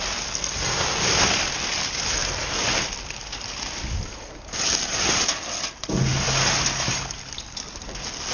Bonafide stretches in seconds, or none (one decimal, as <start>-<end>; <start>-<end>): 0.0-2.2; 3.8-8.3